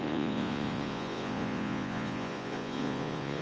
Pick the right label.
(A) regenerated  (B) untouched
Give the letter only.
A